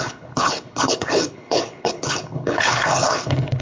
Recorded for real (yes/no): no